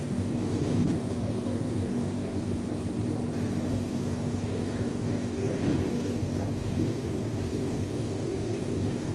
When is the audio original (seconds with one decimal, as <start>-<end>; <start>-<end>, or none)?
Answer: 2.6-3.7